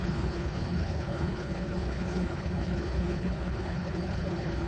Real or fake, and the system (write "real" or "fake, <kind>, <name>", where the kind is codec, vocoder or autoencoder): fake, codec, HILCodec